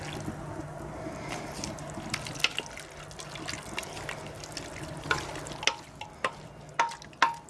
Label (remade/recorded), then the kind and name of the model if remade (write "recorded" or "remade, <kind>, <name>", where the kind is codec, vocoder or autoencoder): recorded